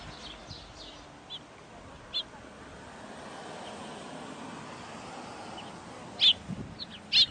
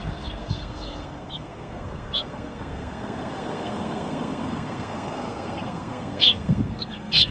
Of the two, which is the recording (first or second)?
first